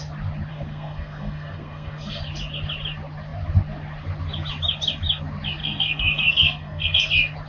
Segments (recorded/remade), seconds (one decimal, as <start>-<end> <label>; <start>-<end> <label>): 0.0-0.5 recorded; 0.5-2.2 remade; 2.2-5.6 recorded; 5.6-7.1 remade; 7.1-7.5 recorded